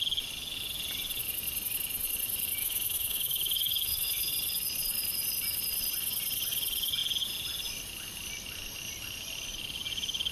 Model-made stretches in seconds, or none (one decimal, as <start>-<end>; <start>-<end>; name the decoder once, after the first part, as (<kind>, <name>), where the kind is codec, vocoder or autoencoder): 2.6-4.3 (autoencoder, DAC-VAE)